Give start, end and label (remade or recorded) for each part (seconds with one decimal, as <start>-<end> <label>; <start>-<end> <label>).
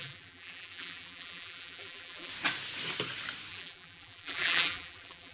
0.0-2.3 remade; 2.3-3.5 recorded; 3.5-5.3 remade